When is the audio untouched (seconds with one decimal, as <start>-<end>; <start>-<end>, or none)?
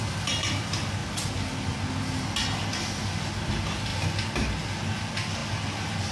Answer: 0.0-6.1